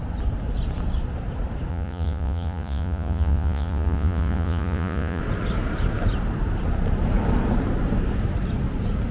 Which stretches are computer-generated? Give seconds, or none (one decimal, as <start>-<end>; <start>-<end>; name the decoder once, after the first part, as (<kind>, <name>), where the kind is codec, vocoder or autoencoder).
1.7-5.2 (vocoder, Vocos)